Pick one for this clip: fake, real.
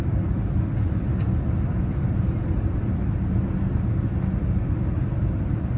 real